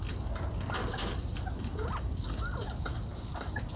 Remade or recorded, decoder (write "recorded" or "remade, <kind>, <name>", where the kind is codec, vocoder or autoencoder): recorded